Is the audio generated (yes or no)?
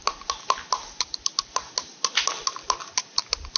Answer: no